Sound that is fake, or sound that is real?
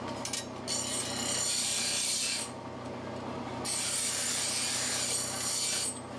real